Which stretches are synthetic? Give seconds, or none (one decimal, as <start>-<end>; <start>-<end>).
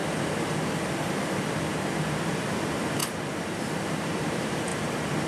0.7-5.3